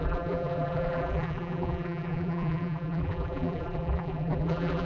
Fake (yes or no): yes